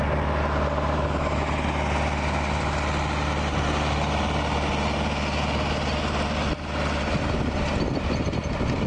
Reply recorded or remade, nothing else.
recorded